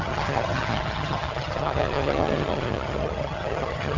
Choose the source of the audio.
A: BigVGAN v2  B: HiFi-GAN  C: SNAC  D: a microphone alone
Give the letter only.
B